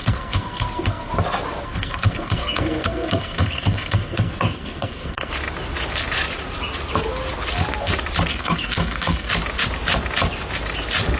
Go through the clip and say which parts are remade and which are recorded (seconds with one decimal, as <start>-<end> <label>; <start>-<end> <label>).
0.0-1.1 remade; 1.1-1.6 recorded; 1.6-5.3 remade; 5.3-8.3 recorded; 8.3-9.3 remade; 9.3-11.2 recorded